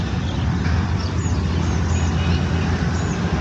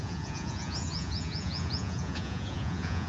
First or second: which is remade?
second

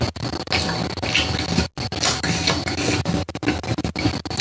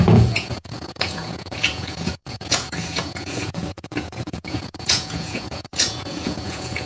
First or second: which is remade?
second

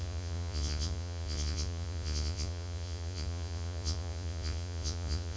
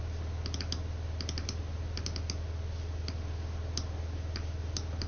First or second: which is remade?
first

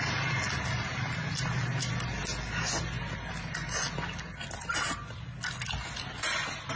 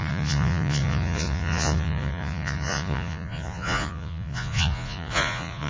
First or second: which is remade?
second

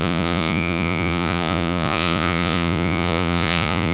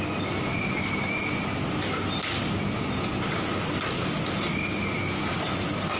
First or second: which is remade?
first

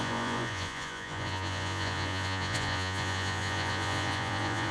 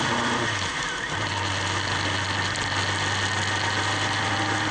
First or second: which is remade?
first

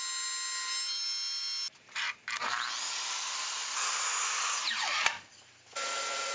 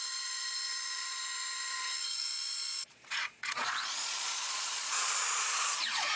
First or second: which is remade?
second